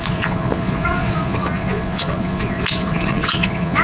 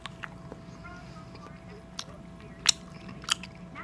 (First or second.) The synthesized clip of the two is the first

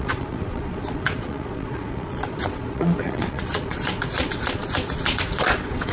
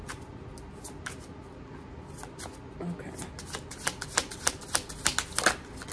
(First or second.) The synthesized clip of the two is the first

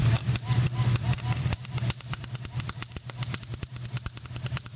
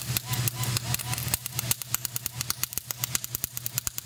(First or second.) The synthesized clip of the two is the first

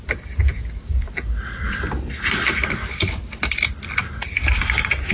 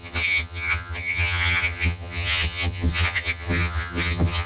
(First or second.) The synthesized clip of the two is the second